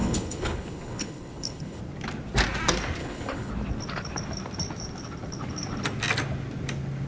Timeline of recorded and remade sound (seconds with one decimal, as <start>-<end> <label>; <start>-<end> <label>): 0.0-1.8 remade; 1.8-3.0 recorded; 3.0-3.5 remade; 3.5-7.1 recorded